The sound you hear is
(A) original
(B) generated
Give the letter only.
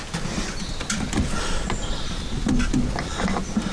A